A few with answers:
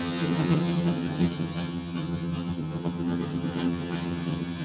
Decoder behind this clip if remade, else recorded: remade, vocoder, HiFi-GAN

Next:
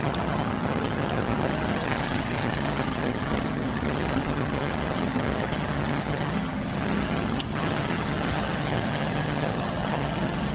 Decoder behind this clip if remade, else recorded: remade, vocoder, HiFi-GAN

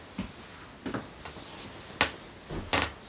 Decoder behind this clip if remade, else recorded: recorded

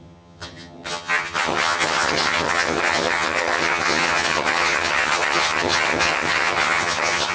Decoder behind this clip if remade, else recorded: remade, vocoder, HiFi-GAN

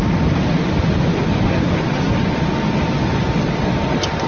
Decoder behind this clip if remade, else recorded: recorded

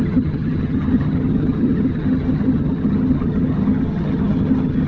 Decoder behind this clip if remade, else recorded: remade, vocoder, HiFi-GAN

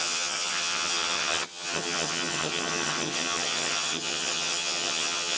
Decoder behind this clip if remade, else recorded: remade, vocoder, HiFi-GAN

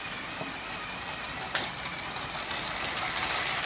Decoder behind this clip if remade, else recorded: recorded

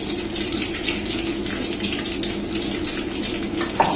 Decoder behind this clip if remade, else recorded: recorded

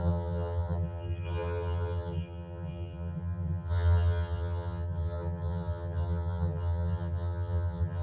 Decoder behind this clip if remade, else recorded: remade, vocoder, HiFi-GAN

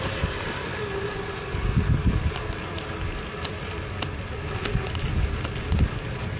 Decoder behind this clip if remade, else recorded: recorded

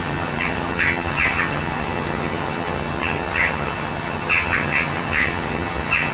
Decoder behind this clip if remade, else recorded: remade, vocoder, HiFi-GAN